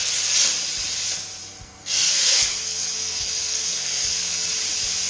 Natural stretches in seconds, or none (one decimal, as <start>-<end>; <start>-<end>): 0.0-1.4; 4.5-5.1